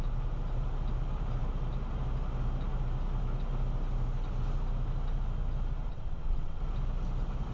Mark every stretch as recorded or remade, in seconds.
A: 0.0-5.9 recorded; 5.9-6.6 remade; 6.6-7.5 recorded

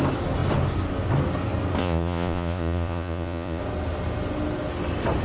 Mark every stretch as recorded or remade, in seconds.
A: 0.0-1.8 recorded; 1.8-3.6 remade; 3.6-5.2 recorded

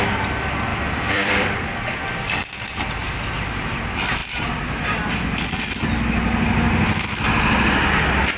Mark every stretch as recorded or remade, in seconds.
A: 0.0-0.7 recorded; 0.7-1.7 remade; 1.7-3.0 recorded; 3.0-3.6 remade; 3.6-8.4 recorded

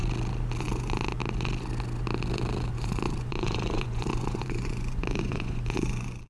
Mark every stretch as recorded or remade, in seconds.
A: 0.0-0.6 recorded; 0.6-1.2 remade; 1.2-2.7 recorded; 2.7-6.3 remade

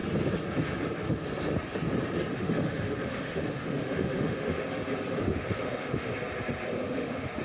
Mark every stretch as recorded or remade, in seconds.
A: 0.0-2.3 recorded; 2.3-4.6 remade; 4.6-5.2 recorded; 5.2-6.1 remade; 6.1-6.8 recorded; 6.8-7.4 remade

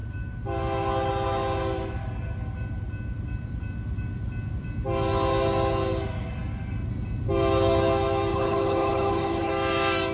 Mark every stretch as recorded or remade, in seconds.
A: 0.0-8.3 recorded; 8.3-9.5 remade; 9.5-10.1 recorded

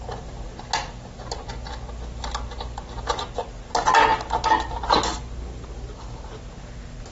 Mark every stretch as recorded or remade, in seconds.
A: 0.0-7.1 recorded